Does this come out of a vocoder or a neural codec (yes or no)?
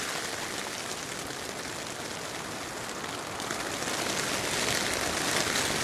no